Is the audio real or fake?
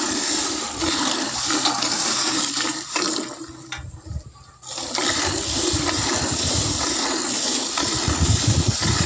real